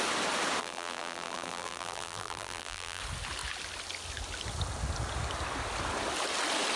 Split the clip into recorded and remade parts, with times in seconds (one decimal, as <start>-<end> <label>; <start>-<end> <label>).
0.0-0.6 recorded; 0.6-3.0 remade; 3.0-6.8 recorded